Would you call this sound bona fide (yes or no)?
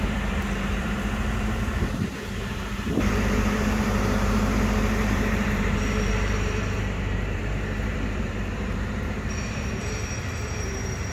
no